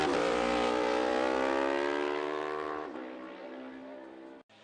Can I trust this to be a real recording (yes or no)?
yes